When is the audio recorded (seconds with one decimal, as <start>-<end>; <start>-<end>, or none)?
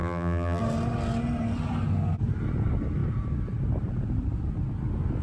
0.6-5.2